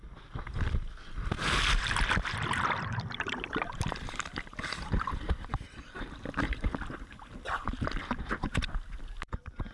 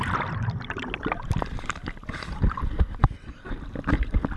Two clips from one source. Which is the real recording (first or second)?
second